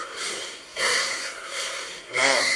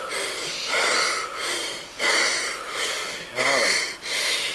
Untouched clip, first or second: second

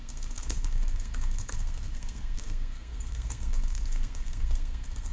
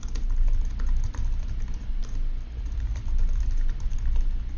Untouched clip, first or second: second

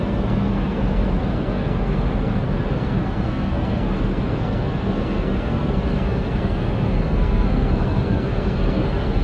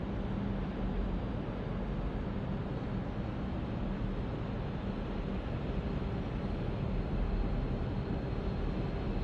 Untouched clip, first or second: second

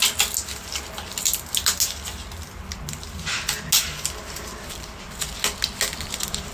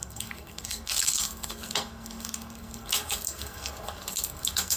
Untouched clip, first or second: first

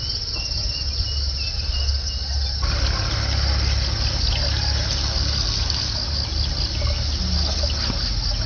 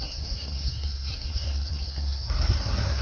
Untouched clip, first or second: first